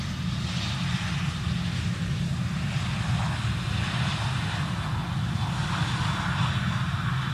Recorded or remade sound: recorded